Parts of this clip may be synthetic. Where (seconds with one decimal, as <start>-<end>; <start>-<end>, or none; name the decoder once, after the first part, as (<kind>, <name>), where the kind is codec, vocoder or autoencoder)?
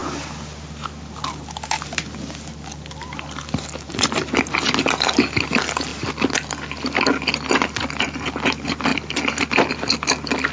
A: none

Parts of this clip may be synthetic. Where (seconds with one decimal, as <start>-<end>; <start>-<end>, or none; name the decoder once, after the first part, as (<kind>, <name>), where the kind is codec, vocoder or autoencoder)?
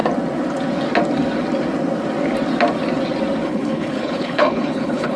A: 3.4-5.2 (codec, HILCodec)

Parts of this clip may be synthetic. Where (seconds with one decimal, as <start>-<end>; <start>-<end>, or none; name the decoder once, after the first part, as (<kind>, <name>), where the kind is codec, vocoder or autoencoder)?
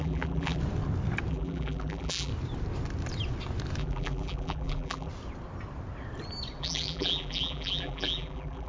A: 0.0-0.6 (vocoder, BigVGAN v2); 1.3-2.3; 3.8-5.1; 6.6-8.7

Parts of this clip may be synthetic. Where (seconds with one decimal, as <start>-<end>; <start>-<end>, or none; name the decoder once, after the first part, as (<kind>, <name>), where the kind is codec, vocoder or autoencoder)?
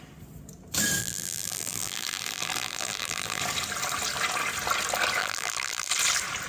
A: 1.0-3.4 (vocoder, BigVGAN v2); 5.2-5.9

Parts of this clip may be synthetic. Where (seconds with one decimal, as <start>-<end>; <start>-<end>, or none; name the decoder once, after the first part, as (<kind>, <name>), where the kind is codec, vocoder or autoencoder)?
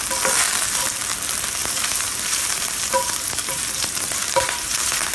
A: 1.6-5.1 (vocoder, BigVGAN v2)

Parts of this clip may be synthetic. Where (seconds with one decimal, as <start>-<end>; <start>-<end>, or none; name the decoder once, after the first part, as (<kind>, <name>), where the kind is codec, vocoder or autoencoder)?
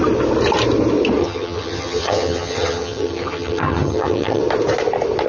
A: 1.2-4.4 (vocoder, HiFi-GAN)